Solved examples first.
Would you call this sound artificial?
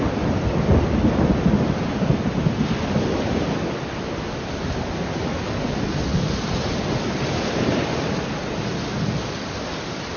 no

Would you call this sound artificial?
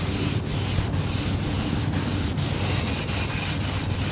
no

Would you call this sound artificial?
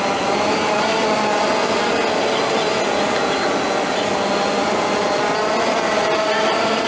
no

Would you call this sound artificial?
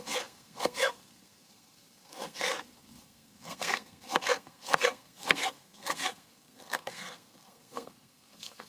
yes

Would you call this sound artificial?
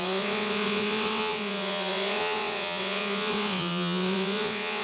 yes